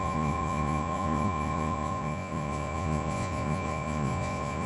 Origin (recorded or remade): remade